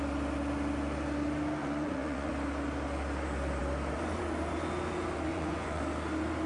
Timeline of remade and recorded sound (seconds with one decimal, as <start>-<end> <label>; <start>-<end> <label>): 0.0-1.6 recorded; 1.6-2.3 remade; 2.3-5.3 recorded; 5.3-5.8 remade; 5.8-6.5 recorded